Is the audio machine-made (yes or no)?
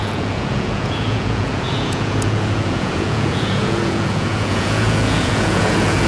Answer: yes